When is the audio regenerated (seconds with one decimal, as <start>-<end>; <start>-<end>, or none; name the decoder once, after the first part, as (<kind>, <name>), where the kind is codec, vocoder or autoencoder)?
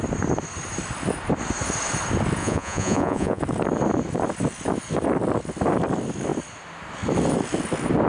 2.4-3.4 (vocoder, Vocos)